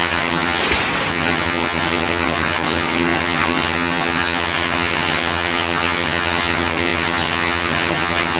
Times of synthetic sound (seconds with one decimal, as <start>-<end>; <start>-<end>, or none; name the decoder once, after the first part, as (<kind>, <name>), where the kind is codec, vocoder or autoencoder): 0.0-0.6 (vocoder, HiFi-GAN); 1.1-8.4